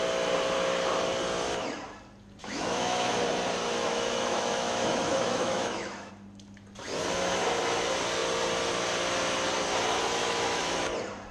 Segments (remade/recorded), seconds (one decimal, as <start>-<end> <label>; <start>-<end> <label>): 0.0-2.4 recorded; 2.4-3.1 remade; 3.1-3.9 recorded; 3.9-6.1 remade; 6.1-10.2 recorded; 10.2-10.8 remade; 10.8-11.3 recorded